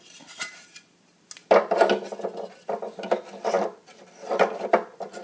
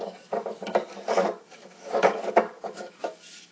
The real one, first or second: first